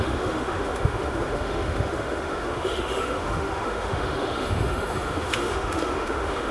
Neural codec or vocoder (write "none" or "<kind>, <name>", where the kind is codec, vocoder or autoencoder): autoencoder, DAC-VAE